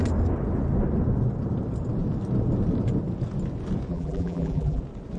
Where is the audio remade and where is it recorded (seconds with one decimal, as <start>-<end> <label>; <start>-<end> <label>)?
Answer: 0.0-3.9 recorded; 3.9-4.8 remade; 4.8-5.2 recorded